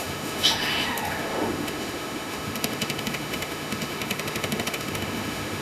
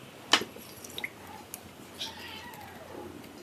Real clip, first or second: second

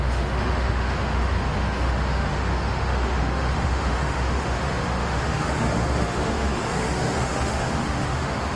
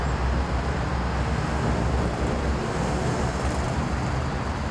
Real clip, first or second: second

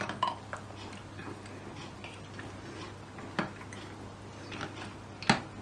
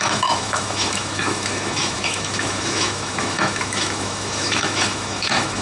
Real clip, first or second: first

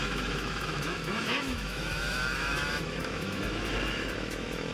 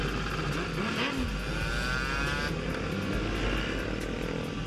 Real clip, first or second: second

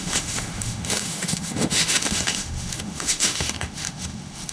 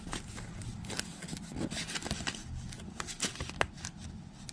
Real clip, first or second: second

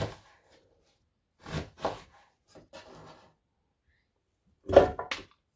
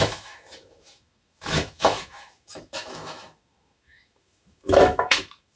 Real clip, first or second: first